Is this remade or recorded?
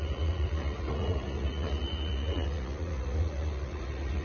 remade